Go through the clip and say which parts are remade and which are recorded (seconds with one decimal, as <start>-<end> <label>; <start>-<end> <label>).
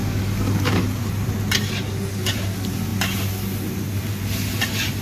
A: 0.0-1.0 remade; 1.0-5.0 recorded